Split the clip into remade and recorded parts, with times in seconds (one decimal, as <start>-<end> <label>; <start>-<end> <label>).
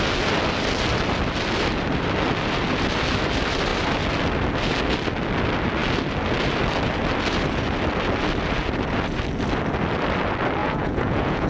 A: 0.0-10.6 recorded; 10.6-11.5 remade